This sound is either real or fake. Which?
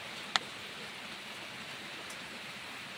real